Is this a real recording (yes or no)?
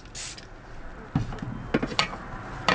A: yes